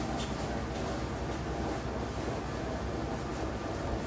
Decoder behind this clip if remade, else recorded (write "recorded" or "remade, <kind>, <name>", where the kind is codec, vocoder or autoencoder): recorded